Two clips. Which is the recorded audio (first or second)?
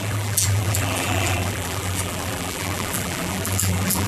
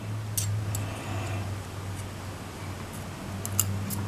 second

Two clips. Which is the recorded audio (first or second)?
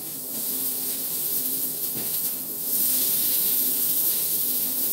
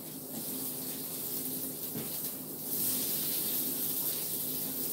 second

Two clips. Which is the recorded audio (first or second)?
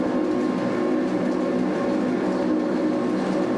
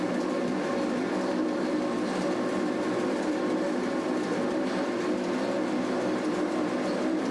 first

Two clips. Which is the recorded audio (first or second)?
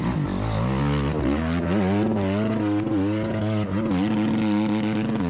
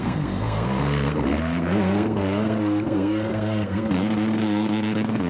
first